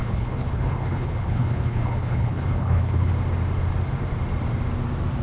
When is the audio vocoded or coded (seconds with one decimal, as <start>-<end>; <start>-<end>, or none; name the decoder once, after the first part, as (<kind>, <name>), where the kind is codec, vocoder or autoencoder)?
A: 0.0-3.1 (codec, HILCodec)